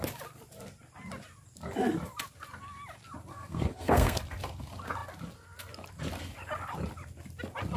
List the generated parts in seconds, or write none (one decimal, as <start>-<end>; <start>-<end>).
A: 3.3-4.2